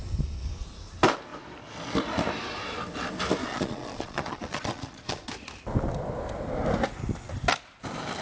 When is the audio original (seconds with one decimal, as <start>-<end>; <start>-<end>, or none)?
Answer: 0.0-3.4; 5.3-8.2